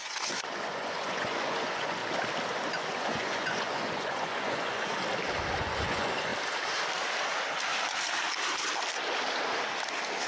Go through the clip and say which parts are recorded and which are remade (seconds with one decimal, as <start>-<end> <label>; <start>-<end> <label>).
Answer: 0.0-2.0 remade; 2.0-2.7 recorded; 2.7-5.0 remade; 5.0-5.6 recorded; 5.6-6.3 remade; 6.3-10.3 recorded